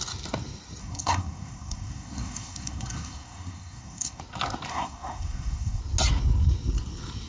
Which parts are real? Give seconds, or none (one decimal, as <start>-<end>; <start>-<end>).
0.0-0.8; 4.2-4.7; 5.8-7.3